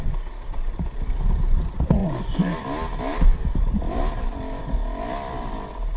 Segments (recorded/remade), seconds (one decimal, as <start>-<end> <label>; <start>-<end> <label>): 0.0-6.0 recorded